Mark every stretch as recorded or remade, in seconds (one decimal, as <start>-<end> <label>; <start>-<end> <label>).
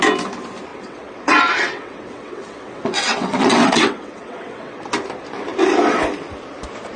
0.0-0.7 recorded; 0.7-4.9 remade; 4.9-7.0 recorded